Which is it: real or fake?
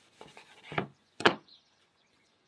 fake